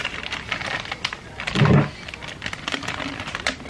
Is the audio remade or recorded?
recorded